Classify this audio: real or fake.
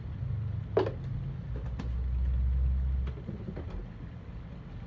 real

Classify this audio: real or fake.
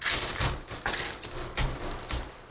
real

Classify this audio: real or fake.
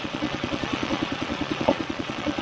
fake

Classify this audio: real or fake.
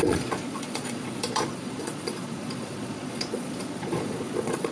fake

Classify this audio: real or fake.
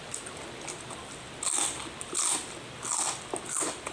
real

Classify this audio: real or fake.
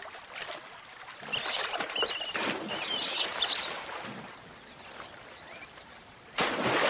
real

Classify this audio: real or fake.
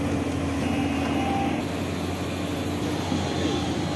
real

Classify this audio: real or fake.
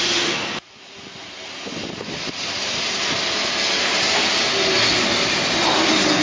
real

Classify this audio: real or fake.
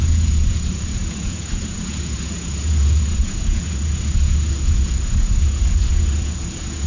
fake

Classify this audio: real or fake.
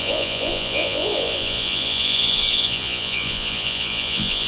fake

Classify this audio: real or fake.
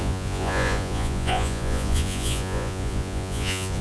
fake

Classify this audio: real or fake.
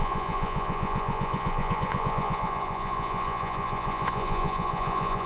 fake